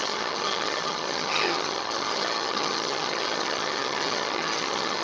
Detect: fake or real fake